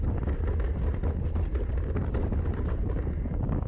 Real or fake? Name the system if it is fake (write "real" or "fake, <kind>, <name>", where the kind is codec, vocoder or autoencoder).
real